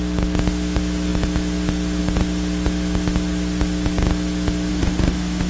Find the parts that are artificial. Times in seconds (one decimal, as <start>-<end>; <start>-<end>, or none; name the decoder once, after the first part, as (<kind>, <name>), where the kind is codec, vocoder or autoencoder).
4.7-5.5 (autoencoder, DAC-VAE)